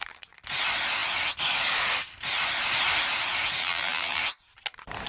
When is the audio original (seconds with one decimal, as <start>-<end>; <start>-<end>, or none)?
0.0-3.6; 4.2-5.1